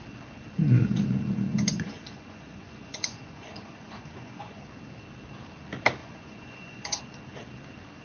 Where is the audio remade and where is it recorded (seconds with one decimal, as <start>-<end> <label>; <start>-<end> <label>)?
0.0-1.5 recorded; 1.5-4.6 remade; 4.6-6.0 recorded; 6.0-7.0 remade; 7.0-8.0 recorded